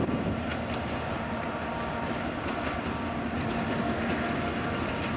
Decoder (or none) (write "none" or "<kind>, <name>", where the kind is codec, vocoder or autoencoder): none